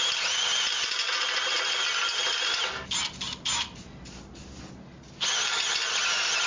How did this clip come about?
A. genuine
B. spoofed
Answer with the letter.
A